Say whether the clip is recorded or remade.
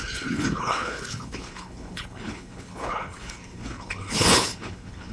remade